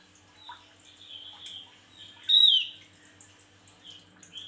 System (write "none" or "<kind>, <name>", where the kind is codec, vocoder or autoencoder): none